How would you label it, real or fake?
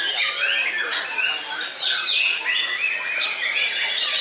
real